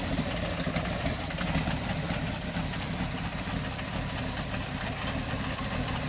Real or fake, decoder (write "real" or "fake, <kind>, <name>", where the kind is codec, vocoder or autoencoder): real